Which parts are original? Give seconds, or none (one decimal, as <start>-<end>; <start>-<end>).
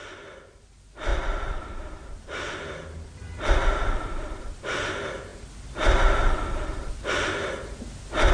0.0-1.1; 4.4-8.3